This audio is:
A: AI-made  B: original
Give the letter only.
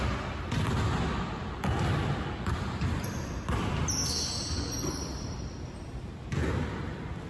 B